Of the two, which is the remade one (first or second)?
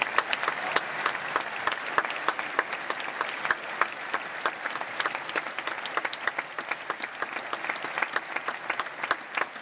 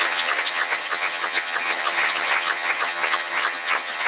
second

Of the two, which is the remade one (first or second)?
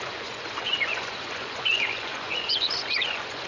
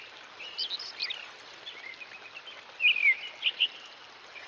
first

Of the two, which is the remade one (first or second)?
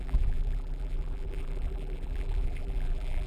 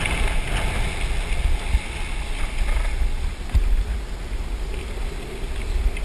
first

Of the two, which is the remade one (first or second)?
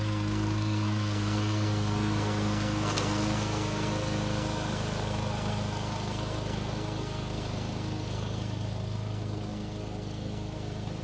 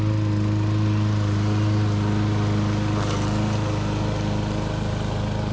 first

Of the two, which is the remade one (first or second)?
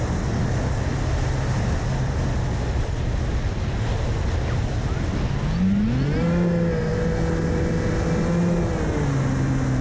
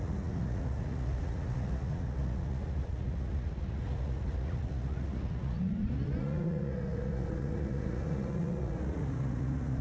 second